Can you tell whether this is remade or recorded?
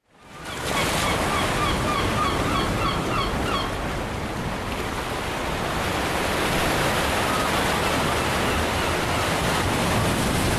recorded